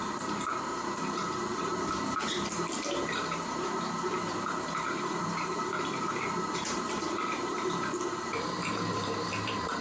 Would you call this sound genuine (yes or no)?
no